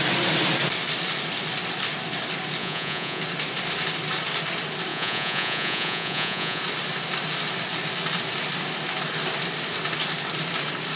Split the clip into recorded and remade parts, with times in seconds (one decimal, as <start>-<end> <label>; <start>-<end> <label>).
0.0-2.6 recorded; 2.6-3.2 remade; 3.2-4.9 recorded; 4.9-6.6 remade; 6.6-11.0 recorded